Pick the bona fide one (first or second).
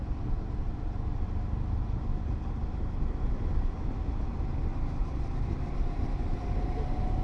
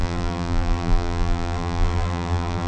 first